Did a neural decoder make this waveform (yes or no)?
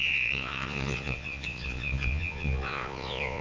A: yes